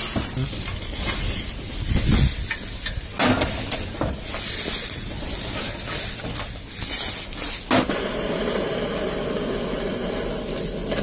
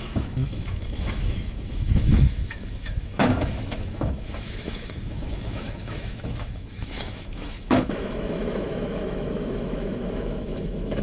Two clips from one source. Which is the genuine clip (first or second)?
first